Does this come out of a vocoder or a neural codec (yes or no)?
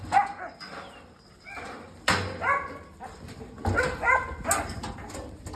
no